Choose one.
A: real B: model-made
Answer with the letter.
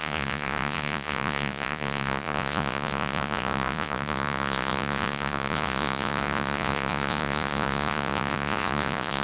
B